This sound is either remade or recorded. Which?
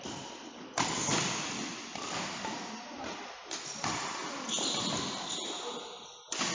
recorded